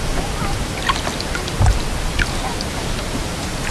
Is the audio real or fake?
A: fake